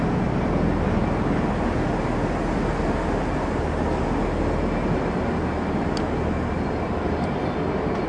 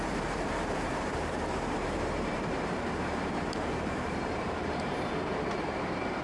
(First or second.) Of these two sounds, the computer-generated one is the second